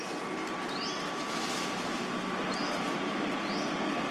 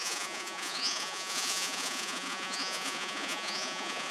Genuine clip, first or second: first